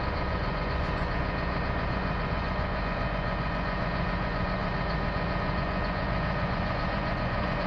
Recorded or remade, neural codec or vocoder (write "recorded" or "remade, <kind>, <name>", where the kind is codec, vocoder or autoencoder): remade, vocoder, Vocos